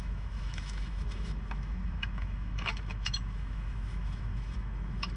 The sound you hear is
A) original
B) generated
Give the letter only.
B